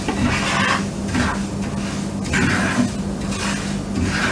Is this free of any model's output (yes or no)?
yes